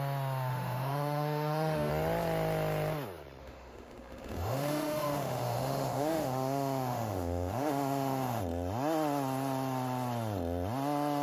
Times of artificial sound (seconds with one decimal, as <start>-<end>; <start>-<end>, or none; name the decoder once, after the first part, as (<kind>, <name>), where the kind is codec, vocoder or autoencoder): 0.5-1.9 (autoencoder, DAC-VAE); 3.4-8.4